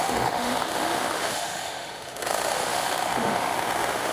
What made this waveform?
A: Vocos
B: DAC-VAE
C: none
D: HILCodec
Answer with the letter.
B